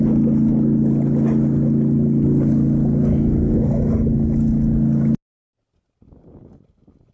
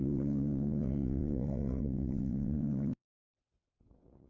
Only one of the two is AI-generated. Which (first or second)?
second